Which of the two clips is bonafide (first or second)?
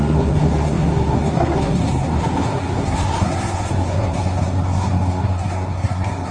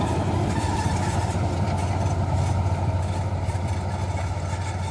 second